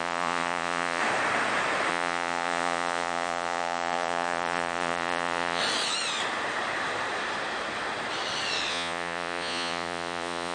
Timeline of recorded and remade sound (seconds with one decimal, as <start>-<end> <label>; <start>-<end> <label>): 0.0-1.0 remade; 1.0-1.9 recorded; 1.9-5.6 remade; 5.6-8.7 recorded; 8.7-10.5 remade